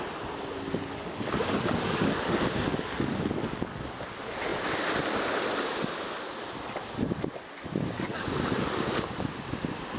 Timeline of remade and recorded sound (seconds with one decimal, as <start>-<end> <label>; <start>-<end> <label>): 0.0-0.8 recorded; 0.8-2.3 remade; 2.3-2.7 recorded; 2.7-4.0 remade; 4.0-8.1 recorded; 8.1-9.4 remade; 9.4-10.0 recorded